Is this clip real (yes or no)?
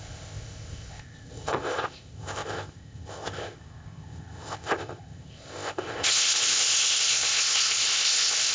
no